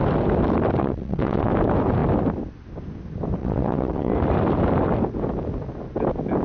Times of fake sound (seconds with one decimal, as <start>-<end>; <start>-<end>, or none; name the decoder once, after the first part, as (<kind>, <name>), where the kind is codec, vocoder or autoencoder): 0.8-1.5 (vocoder, WaveNeXt); 3.4-4.1